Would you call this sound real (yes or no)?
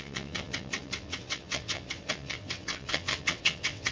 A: no